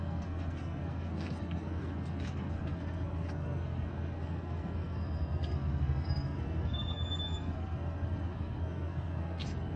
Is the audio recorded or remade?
remade